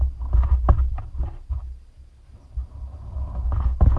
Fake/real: real